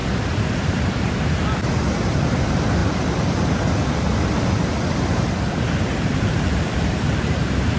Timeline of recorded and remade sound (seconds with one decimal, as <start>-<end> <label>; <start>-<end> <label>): 0.0-1.2 remade; 1.2-2.8 recorded; 2.8-7.2 remade; 7.2-7.8 recorded